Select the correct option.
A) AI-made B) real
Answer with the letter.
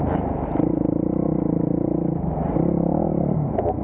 B